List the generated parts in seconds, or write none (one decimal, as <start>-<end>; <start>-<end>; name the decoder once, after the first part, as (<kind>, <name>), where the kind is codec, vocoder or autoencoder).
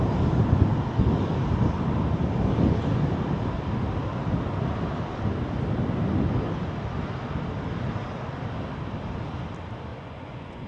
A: 9.9-10.7 (vocoder, Vocos)